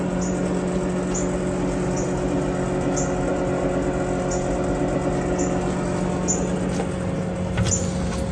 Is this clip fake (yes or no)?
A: no